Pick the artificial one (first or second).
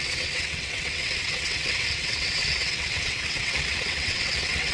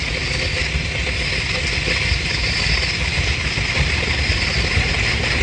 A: first